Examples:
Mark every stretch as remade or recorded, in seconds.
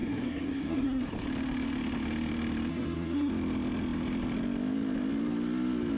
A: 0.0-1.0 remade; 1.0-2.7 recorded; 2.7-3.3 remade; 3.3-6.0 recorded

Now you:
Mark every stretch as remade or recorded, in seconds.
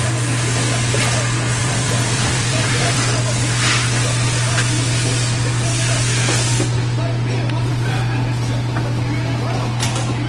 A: 0.0-1.6 recorded; 1.6-3.2 remade; 3.2-10.3 recorded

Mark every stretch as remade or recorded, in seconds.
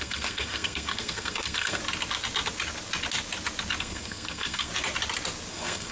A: 0.0-1.8 remade; 1.8-3.8 recorded; 3.8-4.7 remade; 4.7-5.5 recorded; 5.5-5.9 remade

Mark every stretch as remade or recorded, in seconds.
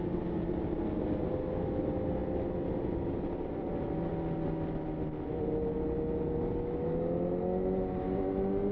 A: 0.0-8.7 recorded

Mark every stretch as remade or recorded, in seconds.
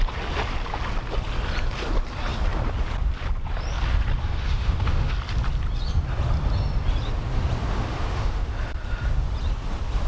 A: 0.0-4.2 recorded; 4.2-5.1 remade; 5.1-7.7 recorded; 7.7-8.5 remade; 8.5-10.1 recorded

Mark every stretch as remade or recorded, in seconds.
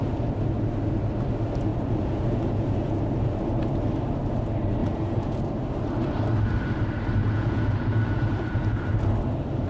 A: 0.0-1.7 recorded; 1.7-3.0 remade; 3.0-4.8 recorded; 4.8-5.4 remade; 5.4-7.2 recorded; 7.2-8.8 remade; 8.8-9.7 recorded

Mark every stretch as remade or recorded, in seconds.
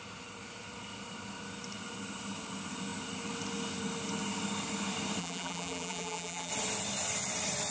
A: 0.0-5.2 recorded; 5.2-6.5 remade; 6.5-7.7 recorded